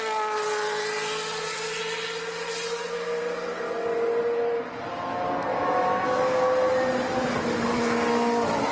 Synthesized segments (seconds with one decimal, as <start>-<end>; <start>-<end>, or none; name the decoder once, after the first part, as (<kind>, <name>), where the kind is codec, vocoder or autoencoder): 5.5-6.2 (autoencoder, DAC-VAE)